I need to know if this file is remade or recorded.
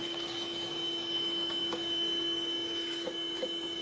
remade